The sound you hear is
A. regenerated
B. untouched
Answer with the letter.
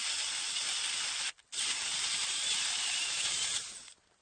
B